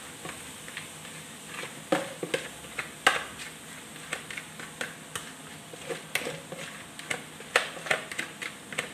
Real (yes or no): yes